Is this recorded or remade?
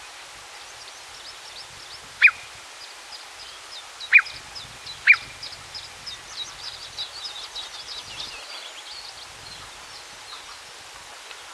recorded